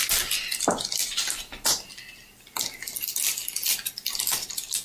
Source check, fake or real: real